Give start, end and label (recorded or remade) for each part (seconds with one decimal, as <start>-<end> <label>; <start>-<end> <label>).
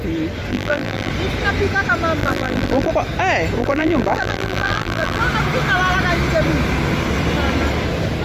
0.0-0.5 recorded; 0.5-1.1 remade; 1.1-2.2 recorded; 2.2-2.9 remade; 2.9-3.6 recorded; 3.6-5.2 remade; 5.2-8.2 recorded